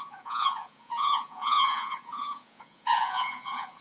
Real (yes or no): no